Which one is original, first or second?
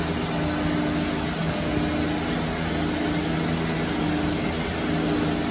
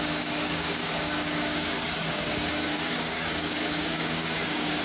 first